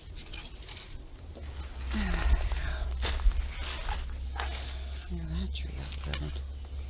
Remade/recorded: recorded